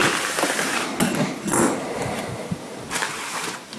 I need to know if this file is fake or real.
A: real